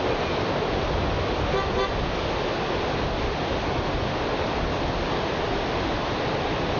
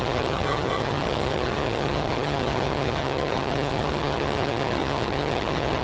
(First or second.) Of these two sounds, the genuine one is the first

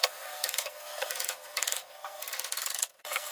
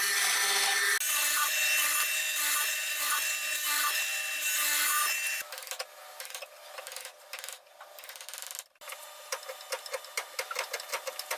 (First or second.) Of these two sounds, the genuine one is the second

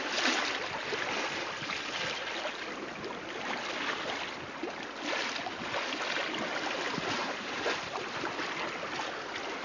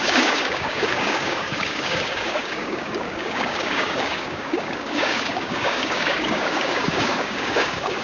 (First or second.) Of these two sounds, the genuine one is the first